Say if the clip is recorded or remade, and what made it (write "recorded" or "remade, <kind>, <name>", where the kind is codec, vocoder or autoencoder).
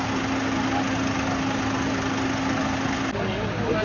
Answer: recorded